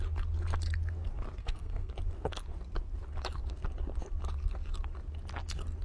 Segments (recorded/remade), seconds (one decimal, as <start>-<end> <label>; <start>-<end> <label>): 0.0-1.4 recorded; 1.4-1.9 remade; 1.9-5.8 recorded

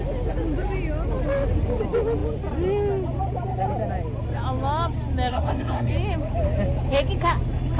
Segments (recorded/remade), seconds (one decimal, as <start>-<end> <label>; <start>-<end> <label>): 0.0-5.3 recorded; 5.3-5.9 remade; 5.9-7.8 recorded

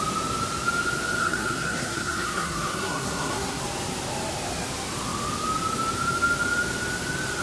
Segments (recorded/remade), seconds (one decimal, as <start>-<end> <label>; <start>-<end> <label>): 0.0-1.2 recorded; 1.2-3.6 remade; 3.6-7.4 recorded

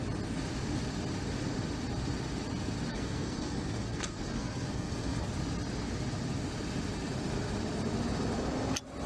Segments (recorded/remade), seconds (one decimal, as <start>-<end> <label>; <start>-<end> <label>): 0.0-2.9 recorded; 2.9-5.3 remade; 5.3-9.1 recorded

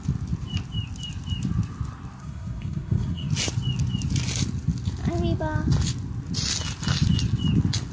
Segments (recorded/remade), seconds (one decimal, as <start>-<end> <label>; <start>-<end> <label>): 0.0-2.2 recorded; 2.2-3.3 remade; 3.3-7.9 recorded

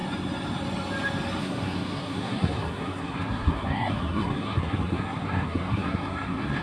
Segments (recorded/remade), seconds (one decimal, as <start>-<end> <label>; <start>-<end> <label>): 0.0-1.4 recorded; 1.4-6.6 remade

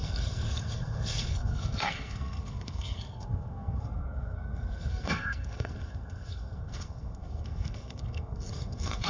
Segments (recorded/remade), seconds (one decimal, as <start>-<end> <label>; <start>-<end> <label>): 0.0-9.1 remade